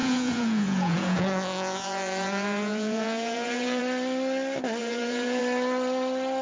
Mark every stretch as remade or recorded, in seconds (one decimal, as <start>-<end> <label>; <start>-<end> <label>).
0.0-3.8 remade; 3.8-4.8 recorded; 4.8-5.4 remade; 5.4-6.4 recorded